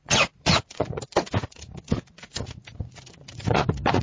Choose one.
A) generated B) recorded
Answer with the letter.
A